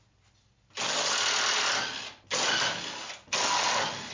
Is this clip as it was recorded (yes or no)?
yes